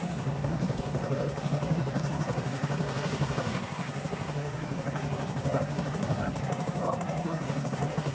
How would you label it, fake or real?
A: fake